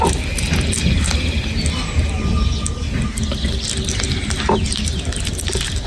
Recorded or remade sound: recorded